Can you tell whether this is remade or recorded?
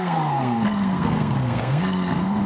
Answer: remade